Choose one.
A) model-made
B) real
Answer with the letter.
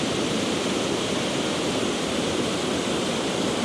A